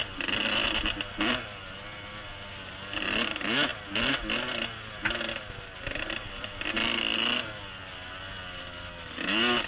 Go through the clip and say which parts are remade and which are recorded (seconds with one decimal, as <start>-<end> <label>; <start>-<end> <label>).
0.0-9.7 recorded